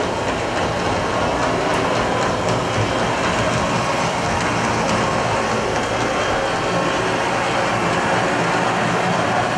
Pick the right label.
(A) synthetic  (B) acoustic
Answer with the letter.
B